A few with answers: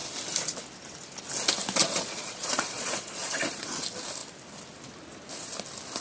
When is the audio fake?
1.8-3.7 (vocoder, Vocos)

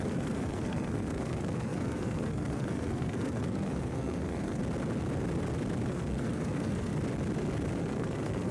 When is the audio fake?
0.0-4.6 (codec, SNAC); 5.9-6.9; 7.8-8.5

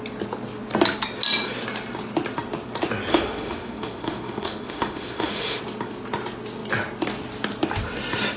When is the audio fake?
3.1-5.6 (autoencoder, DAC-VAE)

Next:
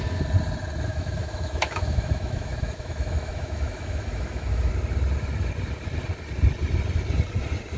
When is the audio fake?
0.9-4.7 (autoencoder, DAC-VAE)

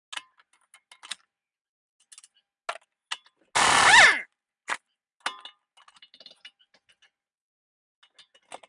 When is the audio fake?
none

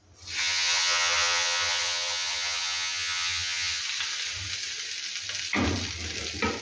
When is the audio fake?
0.4-3.8 (vocoder, HiFi-GAN)

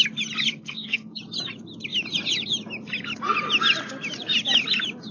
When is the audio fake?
0.5-1.2 (codec, SNAC)

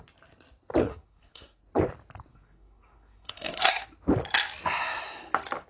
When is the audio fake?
0.8-1.6 (codec, SNAC); 2.3-3.8